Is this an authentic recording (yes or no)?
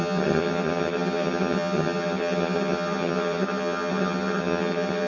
no